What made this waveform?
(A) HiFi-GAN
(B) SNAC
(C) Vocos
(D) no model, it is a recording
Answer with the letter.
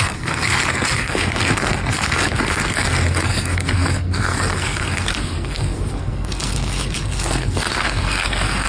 B